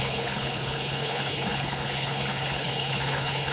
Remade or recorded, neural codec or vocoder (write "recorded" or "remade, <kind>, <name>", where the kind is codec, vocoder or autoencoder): remade, codec, HILCodec